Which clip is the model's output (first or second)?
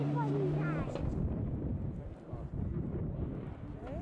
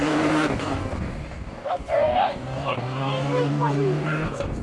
second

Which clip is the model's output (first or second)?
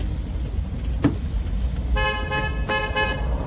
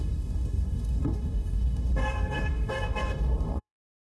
second